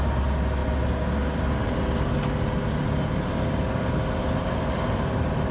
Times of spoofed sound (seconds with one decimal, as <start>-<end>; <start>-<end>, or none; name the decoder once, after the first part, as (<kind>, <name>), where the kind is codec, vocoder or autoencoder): none